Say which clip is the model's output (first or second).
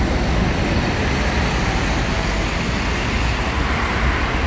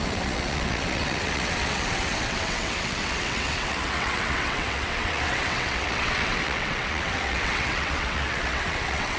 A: second